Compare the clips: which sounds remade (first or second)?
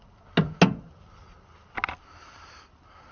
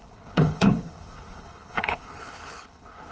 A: second